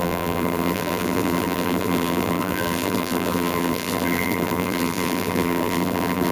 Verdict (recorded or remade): remade